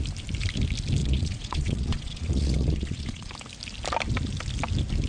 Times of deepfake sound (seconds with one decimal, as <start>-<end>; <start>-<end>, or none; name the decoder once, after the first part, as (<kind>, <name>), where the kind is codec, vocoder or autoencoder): 1.0-3.3 (vocoder, Vocos)